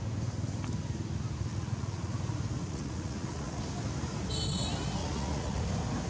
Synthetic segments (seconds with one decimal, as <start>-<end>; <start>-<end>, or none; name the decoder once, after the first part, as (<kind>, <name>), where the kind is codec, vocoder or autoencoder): 1.5-2.2 (vocoder, Vocos); 2.6-3.6; 5.0-5.6